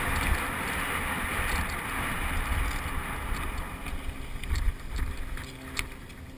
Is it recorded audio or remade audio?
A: recorded